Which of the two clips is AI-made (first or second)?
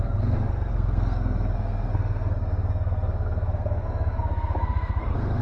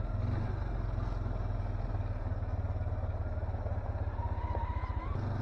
first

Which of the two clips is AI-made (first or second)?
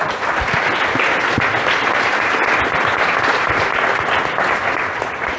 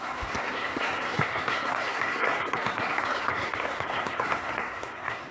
second